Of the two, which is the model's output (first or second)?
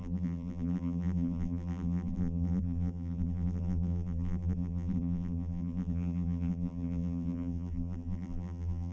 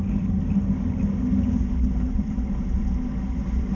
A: first